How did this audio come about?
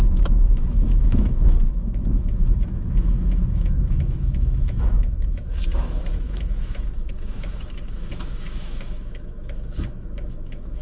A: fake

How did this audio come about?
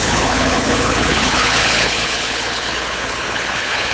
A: fake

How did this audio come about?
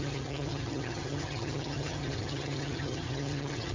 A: fake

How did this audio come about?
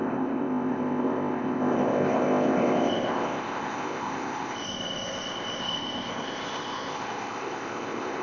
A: fake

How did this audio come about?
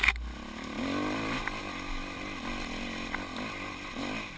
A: real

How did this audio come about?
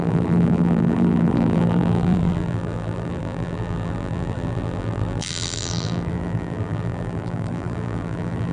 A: fake